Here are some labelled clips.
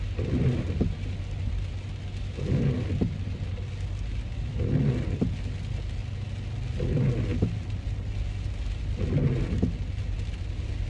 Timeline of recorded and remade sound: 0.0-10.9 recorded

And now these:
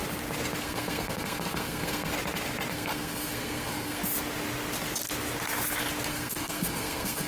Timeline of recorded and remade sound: 0.0-0.6 recorded; 0.6-2.1 remade; 2.1-2.7 recorded; 2.7-4.0 remade; 4.0-6.1 recorded; 6.1-7.3 remade